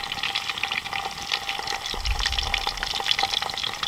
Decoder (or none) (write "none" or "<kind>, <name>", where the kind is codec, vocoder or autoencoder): none